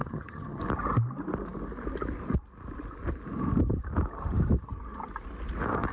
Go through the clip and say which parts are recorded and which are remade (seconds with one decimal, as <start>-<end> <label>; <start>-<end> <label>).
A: 0.0-0.6 remade; 0.6-5.9 recorded